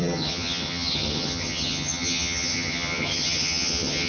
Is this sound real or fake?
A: fake